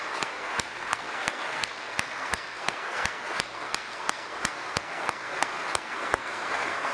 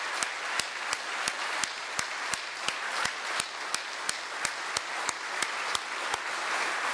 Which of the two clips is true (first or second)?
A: second